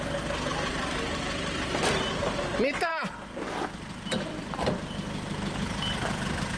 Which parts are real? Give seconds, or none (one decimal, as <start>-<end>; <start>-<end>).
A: 0.0-0.5; 2.5-2.9; 4.4-6.6